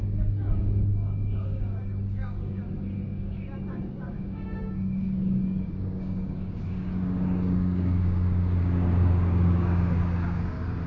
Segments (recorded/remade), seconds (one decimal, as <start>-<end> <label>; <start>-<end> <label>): 0.0-2.6 remade; 2.6-3.7 recorded; 3.7-10.9 remade